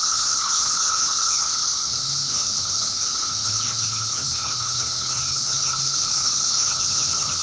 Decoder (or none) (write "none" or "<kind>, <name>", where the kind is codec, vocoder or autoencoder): codec, HILCodec